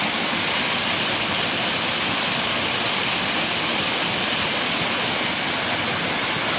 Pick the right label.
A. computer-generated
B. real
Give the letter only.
B